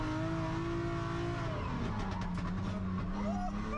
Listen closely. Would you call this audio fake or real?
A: real